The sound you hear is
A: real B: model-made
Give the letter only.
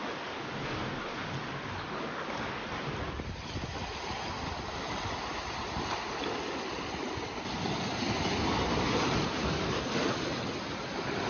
A